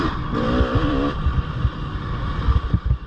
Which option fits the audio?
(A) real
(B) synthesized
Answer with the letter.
A